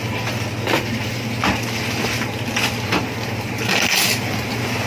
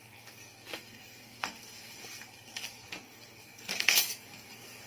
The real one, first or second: first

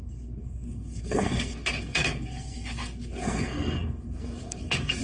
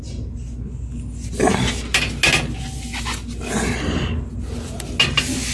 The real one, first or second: second